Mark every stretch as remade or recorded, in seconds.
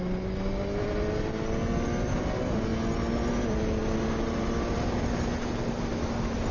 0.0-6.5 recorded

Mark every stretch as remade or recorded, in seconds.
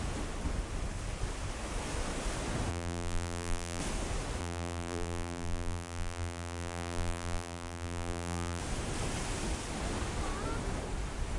0.0-2.7 recorded; 2.7-3.8 remade; 3.8-4.4 recorded; 4.4-8.6 remade; 8.6-11.4 recorded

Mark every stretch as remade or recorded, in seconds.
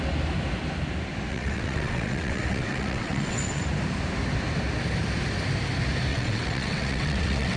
0.0-1.3 recorded; 1.3-3.6 remade; 3.6-6.1 recorded; 6.1-7.6 remade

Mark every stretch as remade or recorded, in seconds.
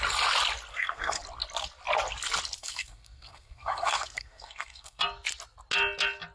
0.0-0.7 recorded; 0.7-1.2 remade; 1.2-2.6 recorded; 2.6-5.0 remade; 5.0-6.3 recorded